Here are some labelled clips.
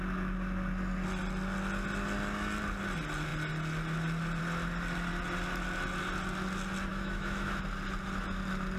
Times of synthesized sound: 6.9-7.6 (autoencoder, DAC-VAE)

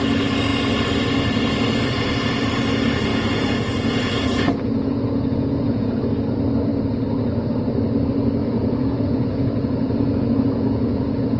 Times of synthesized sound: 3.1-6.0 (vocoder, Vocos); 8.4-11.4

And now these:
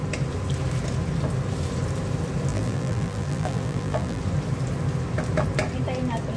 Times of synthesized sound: 2.5-4.2 (vocoder, BigVGAN v2)

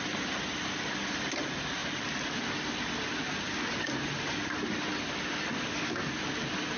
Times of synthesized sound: 1.8-2.3 (vocoder, BigVGAN v2)

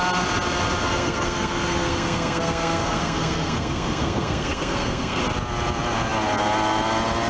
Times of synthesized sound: 0.8-5.2 (codec, SNAC)

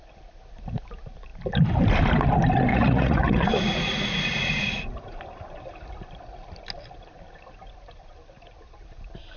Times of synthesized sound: 2.7-5.2 (vocoder, Vocos)